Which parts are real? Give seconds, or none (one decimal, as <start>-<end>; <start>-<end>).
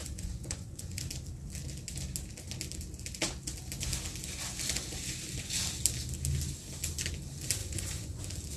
1.0-7.6; 8.2-8.6